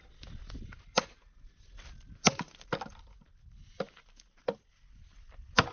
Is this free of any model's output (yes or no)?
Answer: yes